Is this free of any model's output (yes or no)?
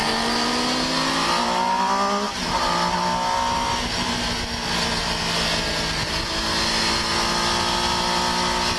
yes